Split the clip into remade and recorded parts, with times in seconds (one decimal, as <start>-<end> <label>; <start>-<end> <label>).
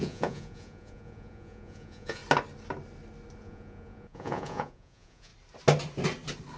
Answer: 0.0-2.2 remade; 2.2-3.4 recorded; 3.4-5.3 remade; 5.3-6.6 recorded